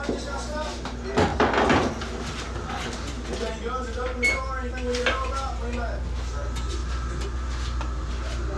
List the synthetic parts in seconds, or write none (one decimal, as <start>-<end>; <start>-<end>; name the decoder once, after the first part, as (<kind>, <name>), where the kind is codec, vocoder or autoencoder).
6.8-8.6 (vocoder, BigVGAN v2)